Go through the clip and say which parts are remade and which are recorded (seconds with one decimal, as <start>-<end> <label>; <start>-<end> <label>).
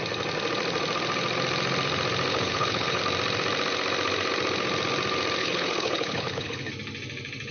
0.0-2.3 recorded; 2.3-3.0 remade; 3.0-5.4 recorded; 5.4-6.7 remade; 6.7-7.5 recorded